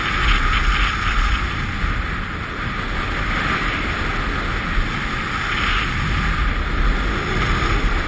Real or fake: real